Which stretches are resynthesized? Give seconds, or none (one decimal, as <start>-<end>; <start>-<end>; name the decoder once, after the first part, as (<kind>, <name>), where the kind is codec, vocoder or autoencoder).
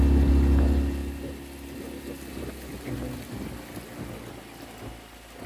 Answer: none